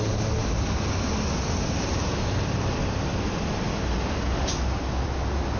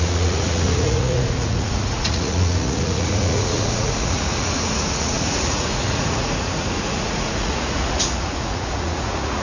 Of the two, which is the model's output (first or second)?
second